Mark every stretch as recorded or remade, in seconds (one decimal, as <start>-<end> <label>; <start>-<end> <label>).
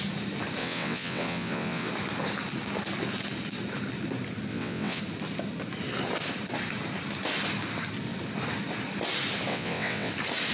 0.0-0.6 recorded; 0.6-1.9 remade; 1.9-4.5 recorded; 4.5-5.0 remade; 5.0-9.5 recorded; 9.5-10.1 remade; 10.1-10.5 recorded